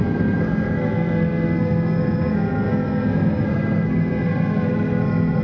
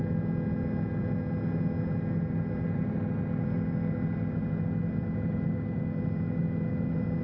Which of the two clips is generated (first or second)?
first